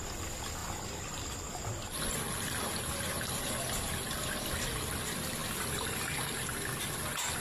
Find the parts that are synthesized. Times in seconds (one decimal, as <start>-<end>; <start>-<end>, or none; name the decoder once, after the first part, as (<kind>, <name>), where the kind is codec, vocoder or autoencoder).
0.6-4.7 (vocoder, BigVGAN v2); 5.4-6.0